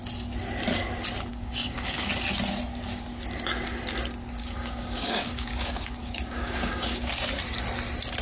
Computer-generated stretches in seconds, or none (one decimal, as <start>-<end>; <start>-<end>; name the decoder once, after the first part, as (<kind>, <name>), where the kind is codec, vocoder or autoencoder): 1.3-2.1 (codec, DAC); 4.4-7.1